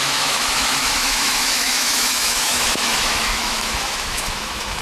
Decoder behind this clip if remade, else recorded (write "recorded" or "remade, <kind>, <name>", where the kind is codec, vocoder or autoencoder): remade, autoencoder, DAC-VAE